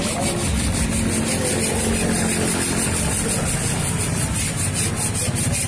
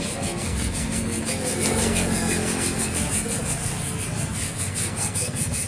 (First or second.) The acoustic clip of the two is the first